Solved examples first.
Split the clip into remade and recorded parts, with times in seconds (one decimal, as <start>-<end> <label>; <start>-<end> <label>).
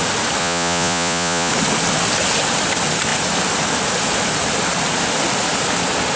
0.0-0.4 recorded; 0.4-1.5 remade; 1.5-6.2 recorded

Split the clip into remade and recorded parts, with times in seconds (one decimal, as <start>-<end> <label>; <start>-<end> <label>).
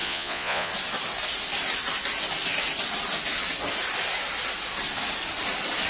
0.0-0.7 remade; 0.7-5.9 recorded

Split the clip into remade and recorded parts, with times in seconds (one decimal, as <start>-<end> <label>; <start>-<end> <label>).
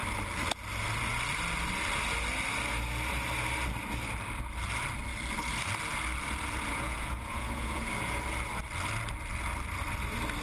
0.0-6.7 recorded; 6.7-7.8 remade; 7.8-10.4 recorded